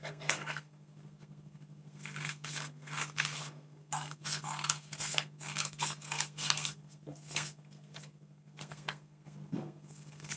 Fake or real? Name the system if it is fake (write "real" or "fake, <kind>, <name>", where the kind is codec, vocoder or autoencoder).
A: fake, codec, SNAC